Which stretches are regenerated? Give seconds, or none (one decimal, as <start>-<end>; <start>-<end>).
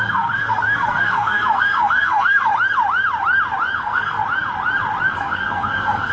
0.0-2.5; 3.8-4.2; 5.1-6.1